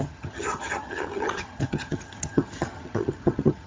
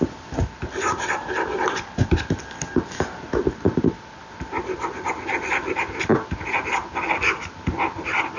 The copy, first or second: first